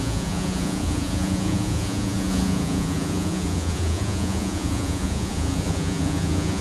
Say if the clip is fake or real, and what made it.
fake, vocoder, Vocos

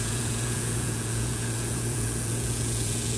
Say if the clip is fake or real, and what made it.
fake, vocoder, Vocos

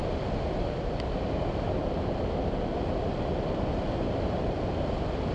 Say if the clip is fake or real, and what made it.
real